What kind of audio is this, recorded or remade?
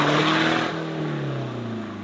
recorded